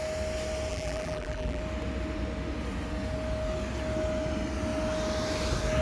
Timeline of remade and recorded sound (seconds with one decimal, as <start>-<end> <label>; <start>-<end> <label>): 0.0-0.7 recorded; 0.7-1.6 remade; 1.6-5.8 recorded